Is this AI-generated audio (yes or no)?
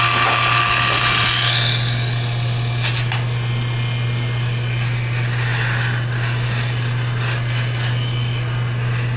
no